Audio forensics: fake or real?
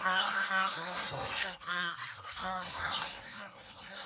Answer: fake